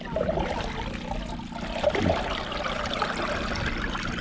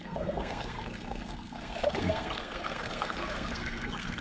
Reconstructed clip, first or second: second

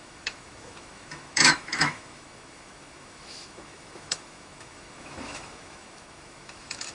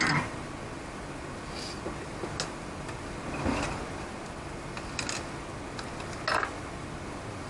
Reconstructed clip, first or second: first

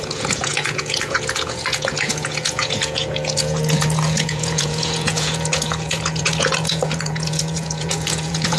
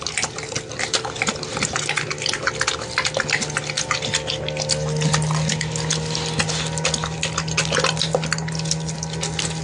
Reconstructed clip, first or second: first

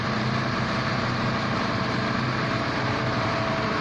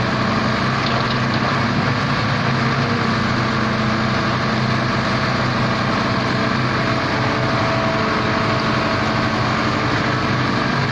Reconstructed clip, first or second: first